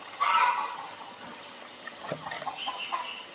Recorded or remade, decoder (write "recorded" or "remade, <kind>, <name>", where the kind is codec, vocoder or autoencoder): remade, vocoder, HiFi-GAN